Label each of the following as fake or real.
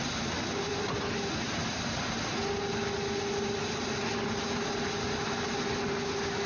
real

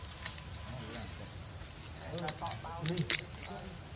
real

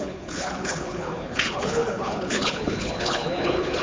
fake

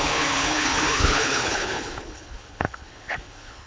fake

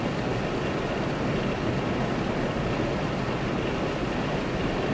real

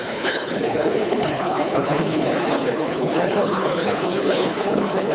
fake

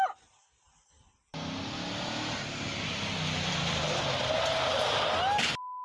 real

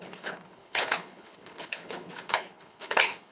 fake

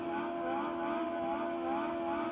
real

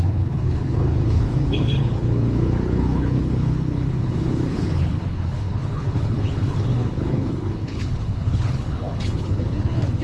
fake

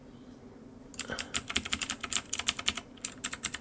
real